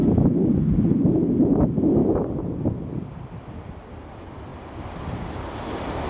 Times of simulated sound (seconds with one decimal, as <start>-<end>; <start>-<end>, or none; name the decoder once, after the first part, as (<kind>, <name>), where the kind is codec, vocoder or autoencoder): 2.0-3.2 (vocoder, BigVGAN v2); 4.5-5.2